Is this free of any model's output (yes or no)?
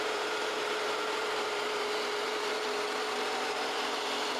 no